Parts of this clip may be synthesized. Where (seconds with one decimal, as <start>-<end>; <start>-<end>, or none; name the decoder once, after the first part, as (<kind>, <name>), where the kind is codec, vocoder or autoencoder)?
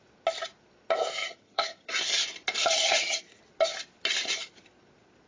1.2-1.9 (vocoder, HiFi-GAN); 2.6-3.4